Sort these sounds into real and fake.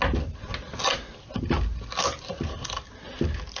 real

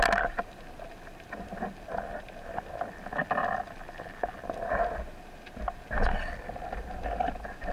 real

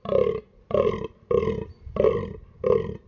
real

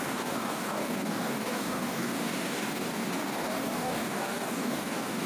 fake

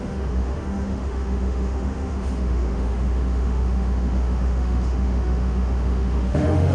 fake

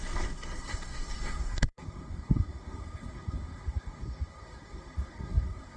fake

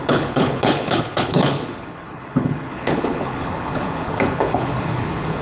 fake